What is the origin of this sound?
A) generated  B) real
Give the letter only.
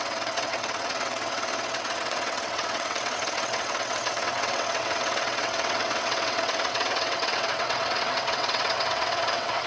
A